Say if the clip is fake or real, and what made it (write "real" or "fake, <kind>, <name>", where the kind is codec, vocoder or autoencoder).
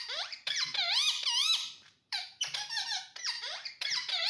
fake, vocoder, BigVGAN v2